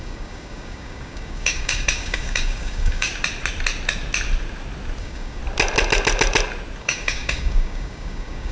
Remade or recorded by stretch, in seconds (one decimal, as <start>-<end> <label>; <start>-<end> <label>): 0.0-3.1 remade; 3.1-5.0 recorded; 5.0-5.4 remade; 5.4-6.8 recorded; 6.8-8.5 remade